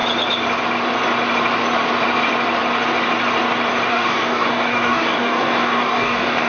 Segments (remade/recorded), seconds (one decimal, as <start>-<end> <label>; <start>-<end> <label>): 0.0-3.9 recorded; 3.9-6.5 remade